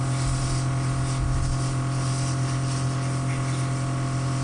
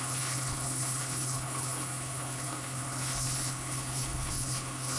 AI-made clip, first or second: second